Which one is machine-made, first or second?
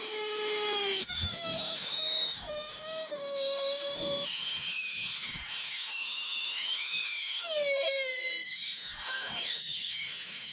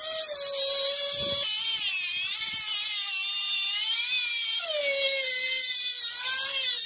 first